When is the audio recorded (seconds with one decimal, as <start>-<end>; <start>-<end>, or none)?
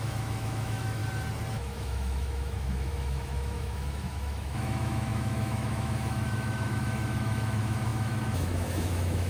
1.0-1.5